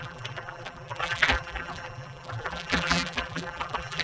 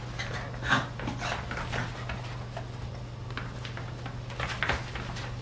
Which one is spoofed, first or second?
first